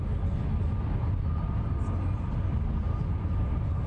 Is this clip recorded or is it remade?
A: recorded